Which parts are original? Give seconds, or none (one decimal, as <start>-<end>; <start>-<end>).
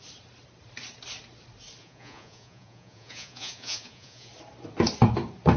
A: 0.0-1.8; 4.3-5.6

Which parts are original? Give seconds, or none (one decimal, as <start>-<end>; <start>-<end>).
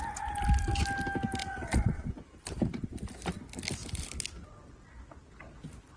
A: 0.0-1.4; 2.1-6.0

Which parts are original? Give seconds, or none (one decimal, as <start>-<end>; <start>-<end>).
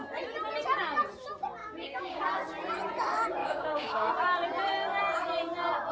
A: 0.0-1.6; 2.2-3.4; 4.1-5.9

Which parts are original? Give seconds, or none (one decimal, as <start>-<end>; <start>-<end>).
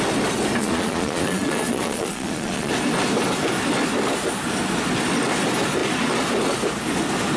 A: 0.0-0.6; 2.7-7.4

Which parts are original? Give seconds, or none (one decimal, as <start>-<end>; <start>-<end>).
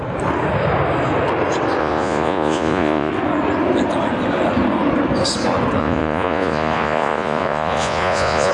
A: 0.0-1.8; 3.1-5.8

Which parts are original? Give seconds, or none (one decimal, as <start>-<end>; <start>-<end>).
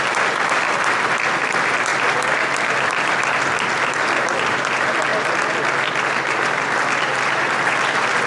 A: 0.0-8.3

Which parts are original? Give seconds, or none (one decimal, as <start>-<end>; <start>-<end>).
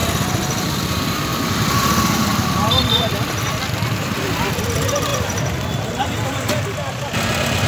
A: 0.0-0.7; 5.1-5.6